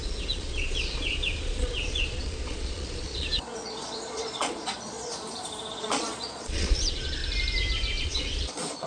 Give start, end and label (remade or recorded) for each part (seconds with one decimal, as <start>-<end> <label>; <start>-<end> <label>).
0.0-5.1 remade; 5.1-5.7 recorded; 5.7-7.2 remade; 7.2-8.0 recorded; 8.0-8.9 remade